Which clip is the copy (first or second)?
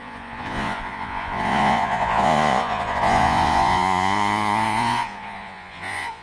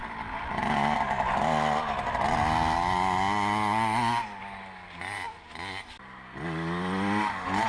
first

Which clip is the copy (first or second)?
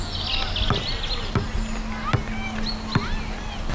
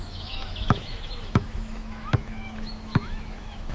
second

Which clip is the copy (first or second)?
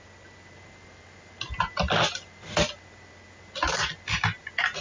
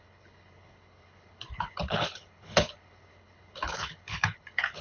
second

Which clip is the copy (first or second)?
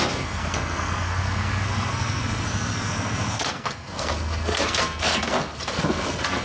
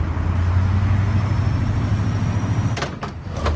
first